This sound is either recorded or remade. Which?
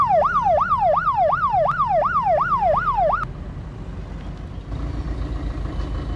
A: recorded